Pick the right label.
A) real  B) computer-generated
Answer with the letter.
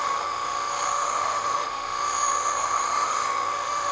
B